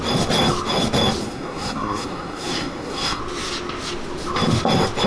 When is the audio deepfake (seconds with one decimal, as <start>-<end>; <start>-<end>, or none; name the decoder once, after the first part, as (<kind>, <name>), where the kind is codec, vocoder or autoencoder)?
1.2-3.2 (codec, SNAC)